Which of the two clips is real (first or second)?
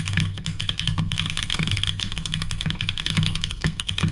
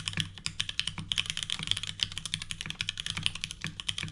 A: second